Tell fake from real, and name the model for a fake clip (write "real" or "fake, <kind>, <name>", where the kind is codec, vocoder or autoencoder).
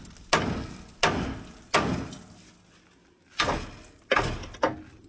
real